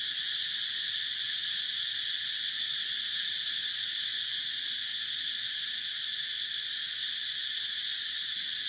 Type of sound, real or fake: real